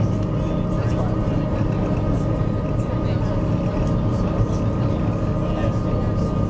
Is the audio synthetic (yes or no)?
no